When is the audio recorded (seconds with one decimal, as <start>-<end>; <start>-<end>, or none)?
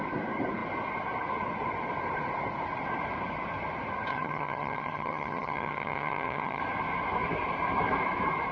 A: 0.0-4.1; 6.6-8.5